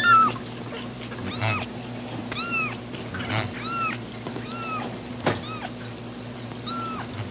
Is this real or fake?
real